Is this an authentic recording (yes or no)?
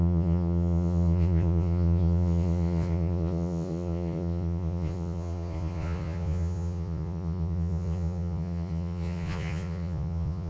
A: no